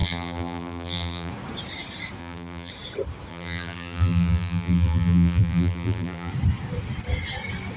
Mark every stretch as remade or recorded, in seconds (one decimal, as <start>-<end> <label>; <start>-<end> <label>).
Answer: 0.0-1.3 remade; 1.3-2.2 recorded; 2.2-2.7 remade; 2.7-3.3 recorded; 3.3-6.3 remade; 6.3-7.8 recorded